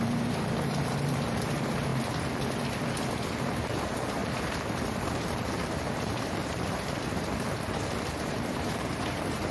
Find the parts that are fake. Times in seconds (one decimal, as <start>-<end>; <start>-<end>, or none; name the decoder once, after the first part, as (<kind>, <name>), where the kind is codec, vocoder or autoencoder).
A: 0.0-1.9 (vocoder, BigVGAN v2); 3.1-9.5